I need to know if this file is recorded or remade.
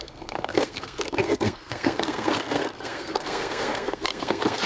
remade